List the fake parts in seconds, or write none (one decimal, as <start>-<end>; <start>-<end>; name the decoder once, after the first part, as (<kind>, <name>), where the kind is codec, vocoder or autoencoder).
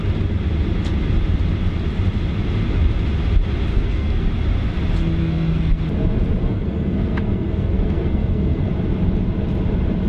3.7-4.3 (codec, SNAC); 5.2-5.8; 6.4-8.7